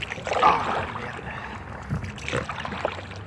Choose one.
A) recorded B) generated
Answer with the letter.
A